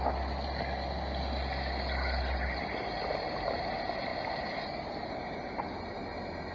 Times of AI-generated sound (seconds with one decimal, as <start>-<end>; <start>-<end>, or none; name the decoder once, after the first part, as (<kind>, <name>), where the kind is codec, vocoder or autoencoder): none